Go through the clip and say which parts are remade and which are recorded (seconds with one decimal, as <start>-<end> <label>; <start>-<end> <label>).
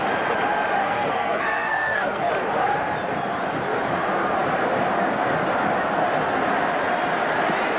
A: 0.0-0.8 recorded; 0.8-2.3 remade; 2.3-7.8 recorded